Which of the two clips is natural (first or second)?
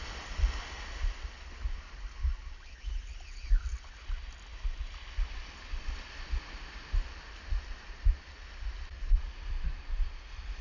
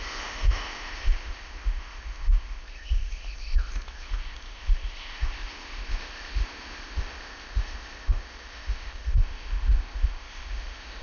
first